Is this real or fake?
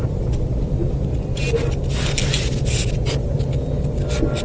real